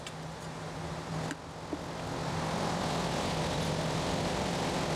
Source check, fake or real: real